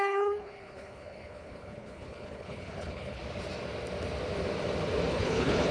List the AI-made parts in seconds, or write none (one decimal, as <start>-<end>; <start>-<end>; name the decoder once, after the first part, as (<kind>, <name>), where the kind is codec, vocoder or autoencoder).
0.0-3.2 (codec, HILCodec); 5.1-5.7